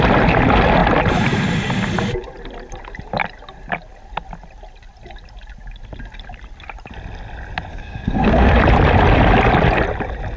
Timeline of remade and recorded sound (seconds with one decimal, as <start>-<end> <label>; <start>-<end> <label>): 0.0-7.7 recorded; 7.7-8.5 remade; 8.5-10.4 recorded